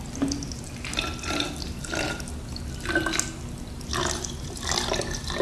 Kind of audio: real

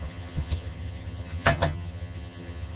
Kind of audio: fake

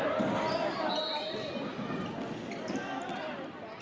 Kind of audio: real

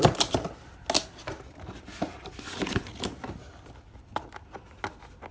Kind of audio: real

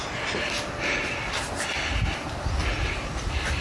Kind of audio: real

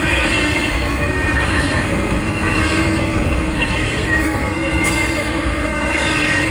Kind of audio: fake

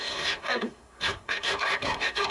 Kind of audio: fake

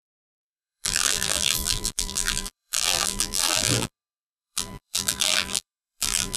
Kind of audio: fake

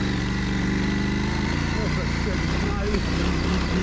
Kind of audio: real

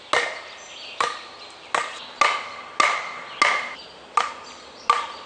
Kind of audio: real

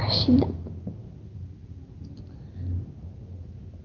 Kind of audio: real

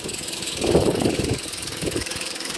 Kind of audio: fake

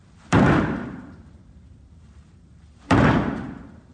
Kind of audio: fake